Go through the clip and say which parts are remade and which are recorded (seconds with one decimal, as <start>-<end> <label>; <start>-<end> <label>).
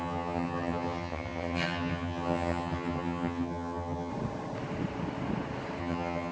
0.0-4.1 remade; 4.1-5.8 recorded; 5.8-6.3 remade